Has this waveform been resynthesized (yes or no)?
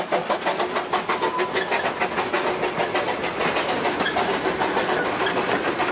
no